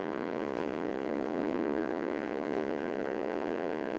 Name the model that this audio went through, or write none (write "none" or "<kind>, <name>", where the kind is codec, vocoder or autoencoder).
vocoder, Vocos